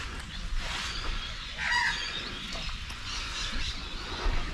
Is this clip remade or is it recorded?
remade